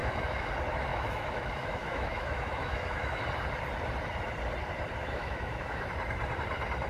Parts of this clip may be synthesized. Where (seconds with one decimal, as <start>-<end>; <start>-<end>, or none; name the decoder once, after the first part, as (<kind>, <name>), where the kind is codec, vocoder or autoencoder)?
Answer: 0.0-0.5 (autoencoder, DAC-VAE); 0.9-3.2; 5.0-5.9